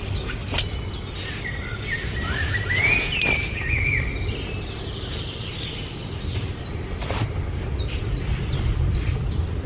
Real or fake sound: real